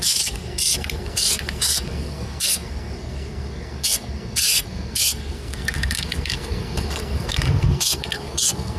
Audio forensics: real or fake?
fake